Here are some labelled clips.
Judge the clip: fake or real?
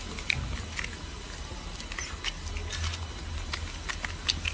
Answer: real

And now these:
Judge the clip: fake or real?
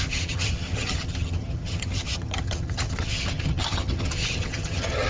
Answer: fake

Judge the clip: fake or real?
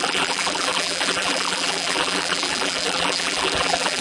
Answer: fake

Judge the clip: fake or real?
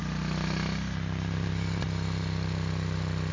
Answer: real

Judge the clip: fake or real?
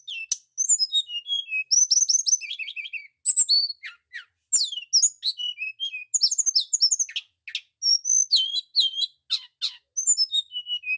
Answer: real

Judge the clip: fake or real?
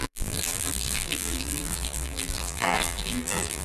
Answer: fake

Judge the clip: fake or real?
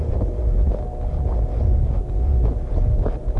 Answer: real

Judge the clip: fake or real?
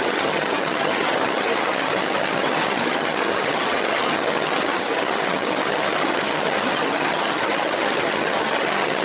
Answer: fake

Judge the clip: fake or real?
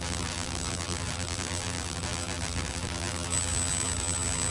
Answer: fake